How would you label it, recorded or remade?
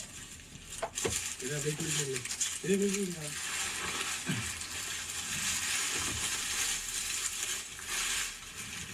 recorded